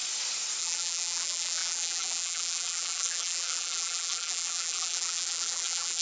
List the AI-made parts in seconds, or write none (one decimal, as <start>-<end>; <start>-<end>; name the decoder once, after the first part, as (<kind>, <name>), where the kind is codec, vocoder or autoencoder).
0.6-6.0 (vocoder, BigVGAN v2)